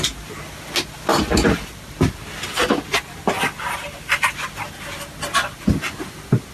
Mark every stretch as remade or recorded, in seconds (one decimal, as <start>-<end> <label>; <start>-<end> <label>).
0.0-1.1 recorded; 1.1-4.7 remade; 4.7-6.5 recorded